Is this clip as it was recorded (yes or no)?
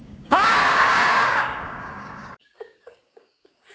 no